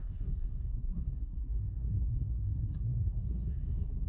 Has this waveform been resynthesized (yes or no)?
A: yes